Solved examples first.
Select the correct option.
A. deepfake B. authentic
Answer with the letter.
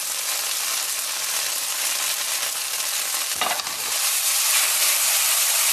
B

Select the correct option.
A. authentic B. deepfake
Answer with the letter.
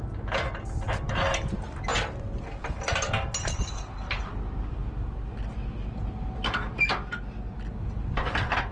A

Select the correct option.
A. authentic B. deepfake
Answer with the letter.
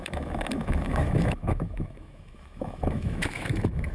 B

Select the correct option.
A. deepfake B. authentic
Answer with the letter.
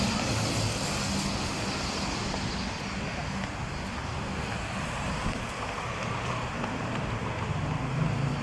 B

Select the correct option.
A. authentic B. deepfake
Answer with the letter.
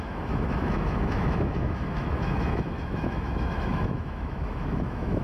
B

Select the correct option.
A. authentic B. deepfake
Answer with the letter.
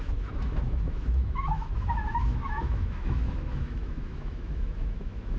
B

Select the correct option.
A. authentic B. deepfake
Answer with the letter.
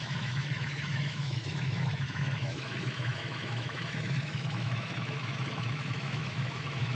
B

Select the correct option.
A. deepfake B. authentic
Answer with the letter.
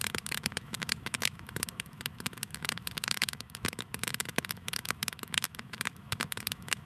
A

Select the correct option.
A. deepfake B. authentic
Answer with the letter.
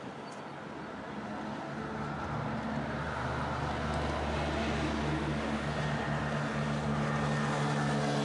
B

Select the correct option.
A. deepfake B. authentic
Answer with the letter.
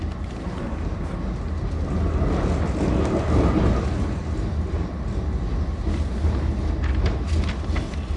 B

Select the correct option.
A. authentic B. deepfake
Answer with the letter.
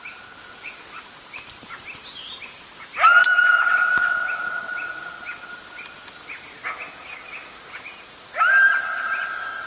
A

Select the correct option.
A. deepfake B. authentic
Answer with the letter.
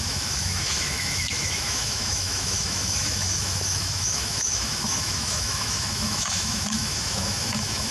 A